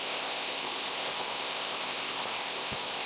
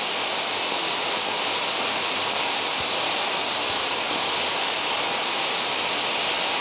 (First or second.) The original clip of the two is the second